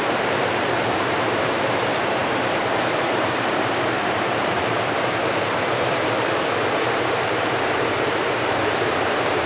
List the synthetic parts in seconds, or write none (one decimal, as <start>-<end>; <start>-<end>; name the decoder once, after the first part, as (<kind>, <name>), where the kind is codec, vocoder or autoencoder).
0.0-9.5 (vocoder, BigVGAN v2)